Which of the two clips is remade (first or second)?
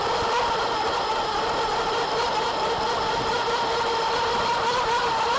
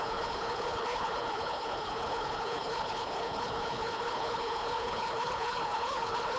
second